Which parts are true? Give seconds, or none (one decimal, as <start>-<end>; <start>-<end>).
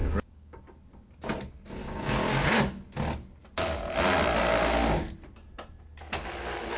0.6-1.8; 2.6-6.8